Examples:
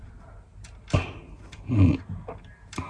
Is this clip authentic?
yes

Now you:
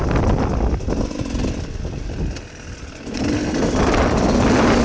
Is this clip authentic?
yes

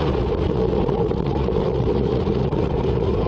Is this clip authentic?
no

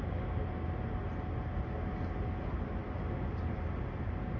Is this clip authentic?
yes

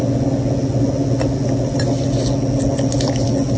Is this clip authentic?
yes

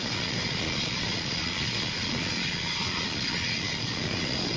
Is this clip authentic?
no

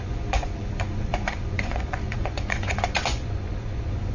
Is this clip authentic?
no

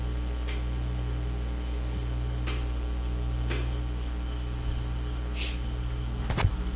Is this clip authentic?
yes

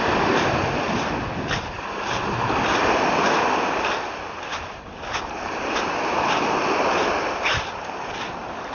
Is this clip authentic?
yes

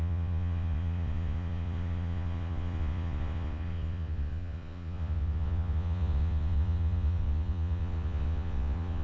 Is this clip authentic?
no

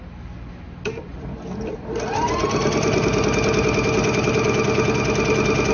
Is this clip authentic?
yes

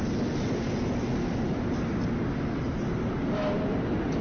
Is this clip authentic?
yes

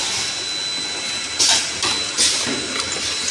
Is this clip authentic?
yes